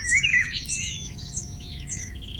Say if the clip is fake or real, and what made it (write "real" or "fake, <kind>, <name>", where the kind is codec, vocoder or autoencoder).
fake, autoencoder, DAC-VAE